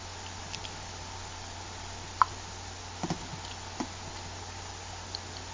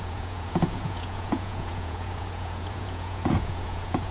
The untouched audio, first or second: first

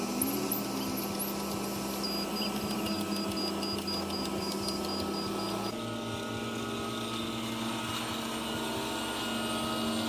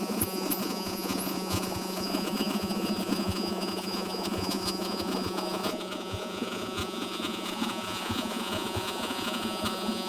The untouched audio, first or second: first